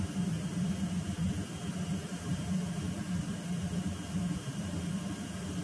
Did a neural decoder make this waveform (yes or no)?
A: no